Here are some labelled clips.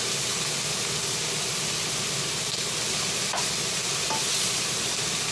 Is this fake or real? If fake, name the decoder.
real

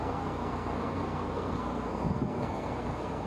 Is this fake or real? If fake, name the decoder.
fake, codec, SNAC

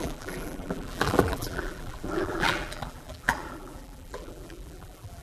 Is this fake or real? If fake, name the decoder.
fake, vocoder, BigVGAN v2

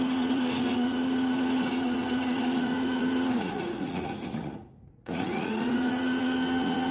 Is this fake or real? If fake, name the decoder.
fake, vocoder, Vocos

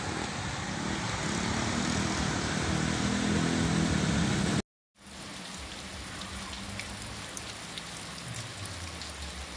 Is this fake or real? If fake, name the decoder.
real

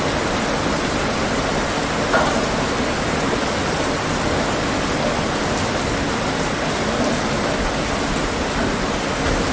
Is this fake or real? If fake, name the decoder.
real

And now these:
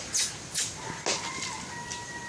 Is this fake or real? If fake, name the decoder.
real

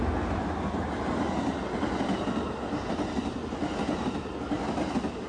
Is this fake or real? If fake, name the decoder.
real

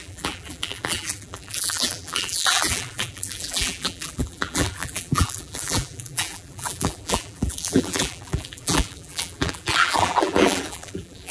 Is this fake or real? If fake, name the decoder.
fake, vocoder, BigVGAN v2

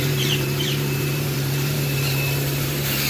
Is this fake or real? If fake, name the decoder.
fake, vocoder, BigVGAN v2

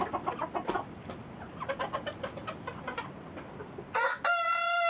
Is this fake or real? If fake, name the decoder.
real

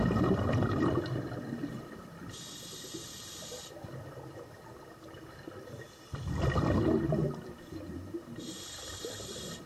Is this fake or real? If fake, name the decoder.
real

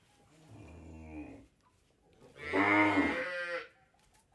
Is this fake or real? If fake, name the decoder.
real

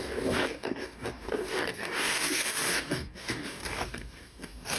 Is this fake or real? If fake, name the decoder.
fake, codec, DAC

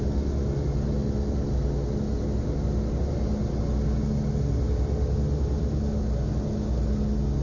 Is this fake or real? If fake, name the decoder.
real